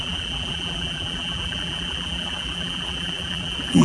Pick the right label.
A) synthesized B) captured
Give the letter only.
A